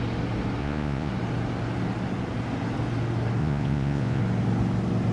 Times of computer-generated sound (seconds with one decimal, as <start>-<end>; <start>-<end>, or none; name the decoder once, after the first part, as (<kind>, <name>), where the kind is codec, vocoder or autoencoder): 0.6-1.1 (vocoder, Vocos); 3.4-4.2